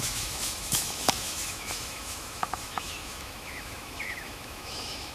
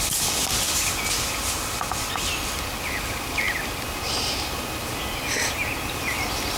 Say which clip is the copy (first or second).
first